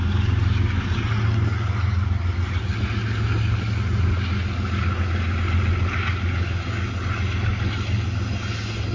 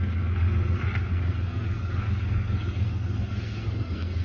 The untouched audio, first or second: first